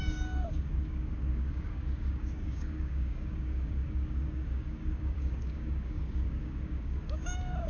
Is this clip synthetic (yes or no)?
yes